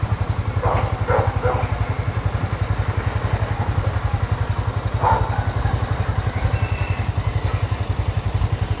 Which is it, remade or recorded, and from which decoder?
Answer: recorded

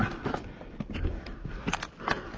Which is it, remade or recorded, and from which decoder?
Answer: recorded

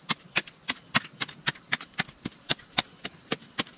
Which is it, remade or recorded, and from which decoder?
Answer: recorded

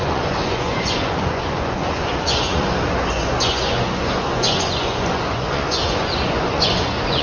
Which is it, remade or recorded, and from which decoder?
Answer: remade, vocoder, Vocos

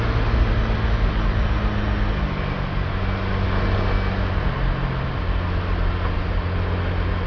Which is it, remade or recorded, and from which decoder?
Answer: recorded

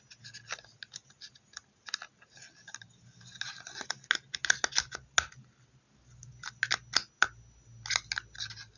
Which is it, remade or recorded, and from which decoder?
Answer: recorded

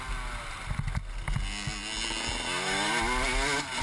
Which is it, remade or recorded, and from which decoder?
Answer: recorded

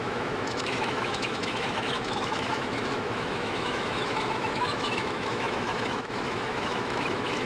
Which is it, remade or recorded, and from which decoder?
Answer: remade, autoencoder, DAC-VAE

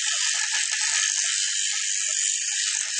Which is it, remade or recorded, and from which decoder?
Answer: recorded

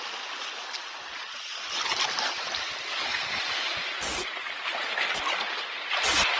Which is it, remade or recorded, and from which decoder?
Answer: recorded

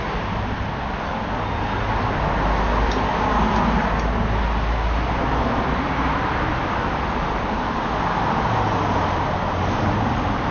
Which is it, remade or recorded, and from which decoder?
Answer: recorded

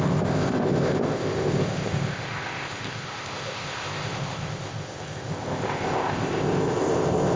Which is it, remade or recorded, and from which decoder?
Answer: remade, codec, ZipCodec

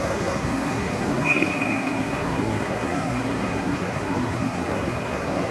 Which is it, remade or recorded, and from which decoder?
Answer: remade, codec, SNAC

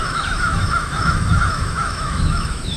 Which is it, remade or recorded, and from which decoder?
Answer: remade, autoencoder, DAC-VAE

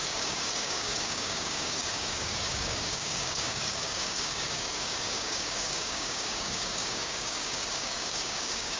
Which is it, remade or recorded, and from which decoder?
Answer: remade, codec, DAC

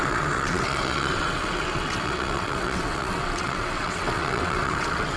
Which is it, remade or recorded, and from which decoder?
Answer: remade, vocoder, WaveNeXt